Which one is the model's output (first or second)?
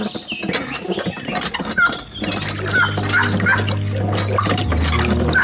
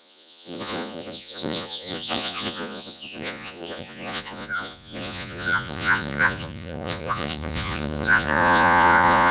second